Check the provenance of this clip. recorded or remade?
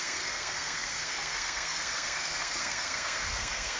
remade